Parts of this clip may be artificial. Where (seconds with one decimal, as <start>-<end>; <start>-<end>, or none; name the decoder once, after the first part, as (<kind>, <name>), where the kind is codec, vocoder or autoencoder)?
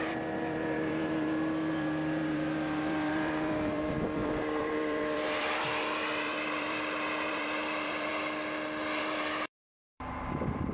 0.0-8.1 (vocoder, BigVGAN v2); 9.0-10.7